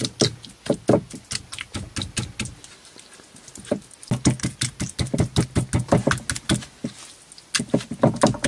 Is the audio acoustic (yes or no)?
yes